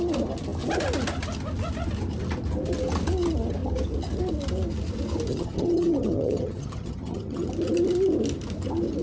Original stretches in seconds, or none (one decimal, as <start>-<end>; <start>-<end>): 0.0-5.3; 7.5-9.0